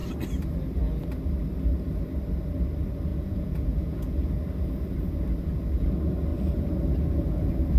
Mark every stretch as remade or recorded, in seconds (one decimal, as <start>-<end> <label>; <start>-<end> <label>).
0.0-3.1 recorded; 3.1-4.3 remade; 4.3-7.8 recorded